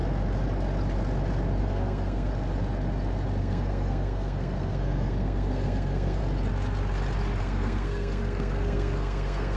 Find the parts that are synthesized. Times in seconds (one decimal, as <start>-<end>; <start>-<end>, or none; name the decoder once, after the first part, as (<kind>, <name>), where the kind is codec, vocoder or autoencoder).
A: 1.6-2.3 (codec, SNAC); 3.4-6.2; 7.4-9.6